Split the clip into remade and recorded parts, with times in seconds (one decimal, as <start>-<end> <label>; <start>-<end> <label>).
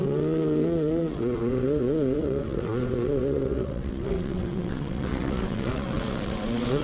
0.0-6.8 remade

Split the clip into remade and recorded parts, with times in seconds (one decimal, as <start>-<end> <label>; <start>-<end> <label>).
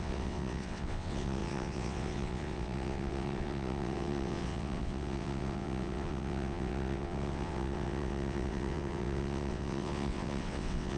0.0-11.0 remade